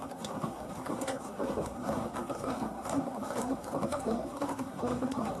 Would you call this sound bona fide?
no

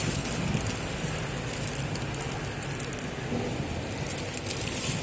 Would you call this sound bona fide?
yes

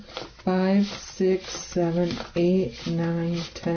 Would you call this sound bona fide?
yes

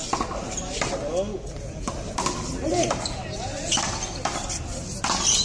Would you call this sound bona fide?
yes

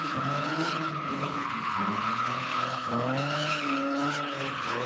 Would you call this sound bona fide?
no